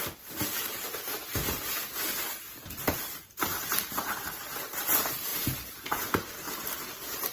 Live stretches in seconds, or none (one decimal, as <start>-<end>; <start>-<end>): 0.0-5.3; 6.1-7.3